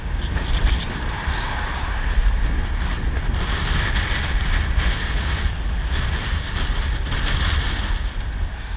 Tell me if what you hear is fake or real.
real